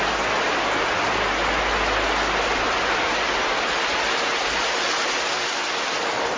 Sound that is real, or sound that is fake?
real